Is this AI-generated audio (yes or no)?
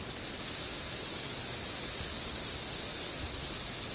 no